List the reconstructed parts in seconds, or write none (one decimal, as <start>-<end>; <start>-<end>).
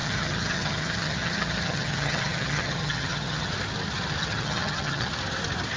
0.0-3.5; 4.2-5.1